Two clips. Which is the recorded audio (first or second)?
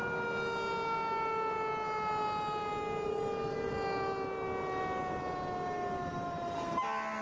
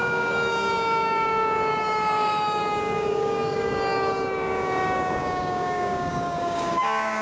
first